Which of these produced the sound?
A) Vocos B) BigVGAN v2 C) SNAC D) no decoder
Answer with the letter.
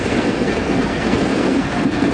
C